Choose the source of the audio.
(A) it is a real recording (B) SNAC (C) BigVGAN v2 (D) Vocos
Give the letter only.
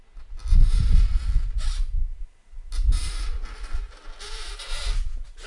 A